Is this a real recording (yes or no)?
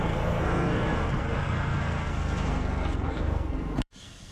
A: no